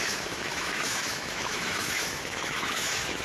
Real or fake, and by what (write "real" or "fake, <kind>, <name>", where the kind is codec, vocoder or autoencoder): fake, autoencoder, DAC-VAE